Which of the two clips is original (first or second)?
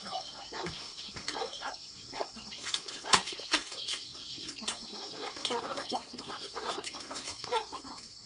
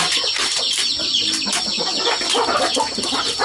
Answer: second